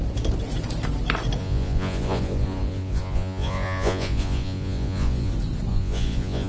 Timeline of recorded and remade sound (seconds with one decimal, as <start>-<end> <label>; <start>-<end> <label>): 0.0-1.4 recorded; 1.4-5.3 remade; 5.3-5.7 recorded; 5.7-6.5 remade

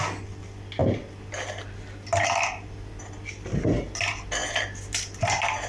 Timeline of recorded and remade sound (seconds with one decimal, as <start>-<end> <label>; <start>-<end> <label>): 0.0-5.7 recorded

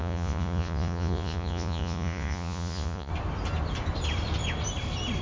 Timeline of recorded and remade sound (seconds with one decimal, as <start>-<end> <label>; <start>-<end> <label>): 0.0-3.1 remade; 3.1-5.2 recorded

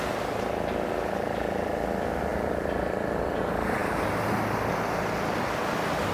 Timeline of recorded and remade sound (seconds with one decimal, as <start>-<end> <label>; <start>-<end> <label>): 0.0-6.1 recorded

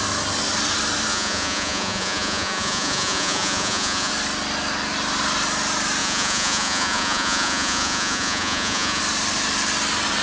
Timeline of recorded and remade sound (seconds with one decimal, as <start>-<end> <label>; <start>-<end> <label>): 0.0-1.1 recorded; 1.1-4.1 remade; 4.1-6.0 recorded; 6.0-9.0 remade; 9.0-10.2 recorded